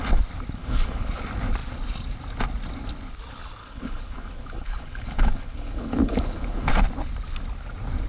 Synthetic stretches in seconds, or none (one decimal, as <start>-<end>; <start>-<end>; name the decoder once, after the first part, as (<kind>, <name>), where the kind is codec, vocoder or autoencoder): 0.6-1.2 (codec, HILCodec); 3.6-6.7